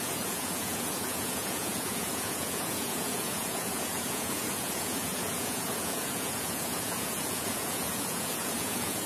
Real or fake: fake